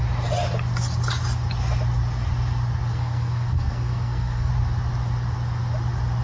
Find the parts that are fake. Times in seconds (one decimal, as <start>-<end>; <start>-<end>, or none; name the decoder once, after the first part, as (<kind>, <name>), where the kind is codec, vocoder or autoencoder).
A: 2.9-4.5 (codec, SNAC)